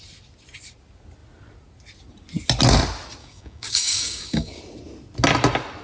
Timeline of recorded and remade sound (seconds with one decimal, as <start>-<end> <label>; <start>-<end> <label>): 0.0-3.2 recorded; 3.2-4.6 remade; 4.6-5.8 recorded